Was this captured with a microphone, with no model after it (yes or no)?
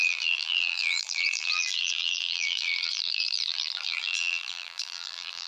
no